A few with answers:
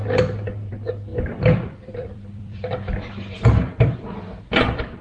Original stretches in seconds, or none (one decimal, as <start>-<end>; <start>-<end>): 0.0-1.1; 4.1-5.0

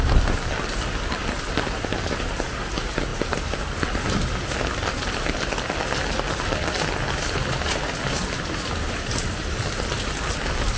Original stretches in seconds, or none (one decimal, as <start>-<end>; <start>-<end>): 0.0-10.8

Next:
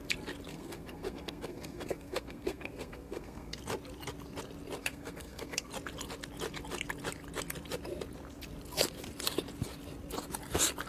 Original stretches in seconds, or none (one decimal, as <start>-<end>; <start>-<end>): 0.0-0.5; 3.6-4.8; 5.7-10.9